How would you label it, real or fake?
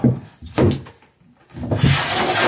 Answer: real